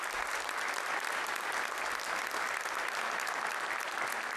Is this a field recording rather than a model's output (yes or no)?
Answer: yes